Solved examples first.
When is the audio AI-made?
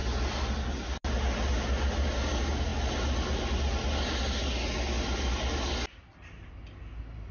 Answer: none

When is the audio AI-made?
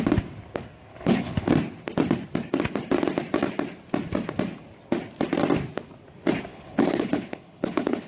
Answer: 0.9-1.5 (codec, HILCodec); 6.5-8.1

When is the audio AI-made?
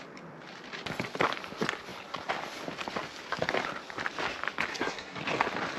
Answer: 4.7-5.2 (codec, SNAC)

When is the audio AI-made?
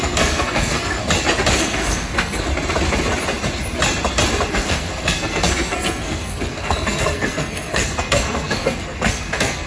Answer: 0.0-1.0 (codec, SNAC); 1.5-2.5; 4.5-9.7